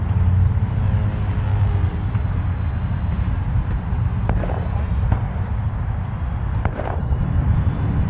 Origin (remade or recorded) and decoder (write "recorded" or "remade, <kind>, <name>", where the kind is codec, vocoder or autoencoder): recorded